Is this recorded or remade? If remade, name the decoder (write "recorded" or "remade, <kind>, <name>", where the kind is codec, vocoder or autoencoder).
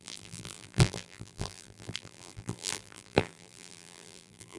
remade, vocoder, BigVGAN v2